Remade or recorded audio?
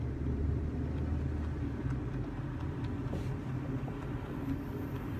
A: recorded